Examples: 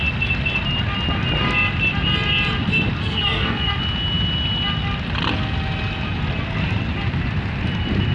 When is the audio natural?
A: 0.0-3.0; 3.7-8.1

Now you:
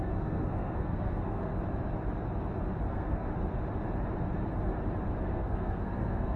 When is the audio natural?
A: 1.5-2.9; 3.3-5.2

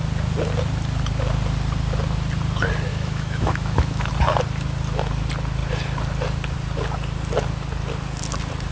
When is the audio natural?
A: 0.0-2.9; 4.1-8.7